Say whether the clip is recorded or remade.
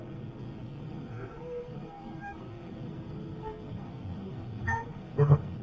remade